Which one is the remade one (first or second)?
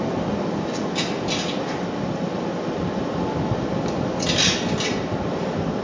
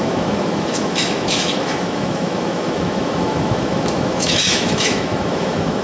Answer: second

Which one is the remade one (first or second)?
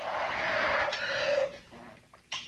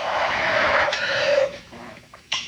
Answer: second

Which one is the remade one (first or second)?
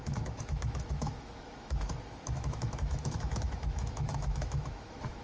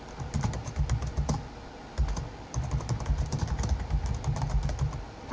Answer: first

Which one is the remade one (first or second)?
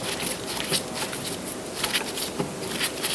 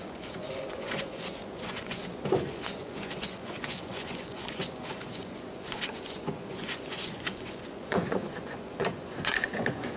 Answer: second